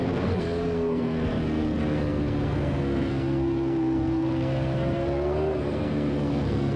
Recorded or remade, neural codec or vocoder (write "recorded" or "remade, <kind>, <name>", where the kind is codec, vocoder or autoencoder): remade, codec, SNAC